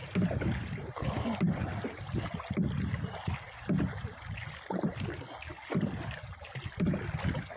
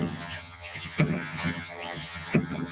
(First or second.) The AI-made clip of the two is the second